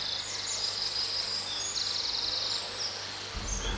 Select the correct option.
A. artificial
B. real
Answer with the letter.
B